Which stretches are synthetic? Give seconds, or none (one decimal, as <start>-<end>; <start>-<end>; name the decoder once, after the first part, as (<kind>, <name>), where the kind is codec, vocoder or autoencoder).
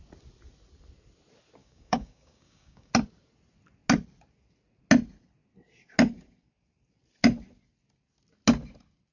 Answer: 1.6-2.9 (codec, DAC)